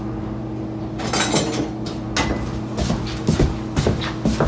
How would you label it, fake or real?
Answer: real